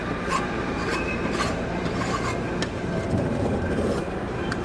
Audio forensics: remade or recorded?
remade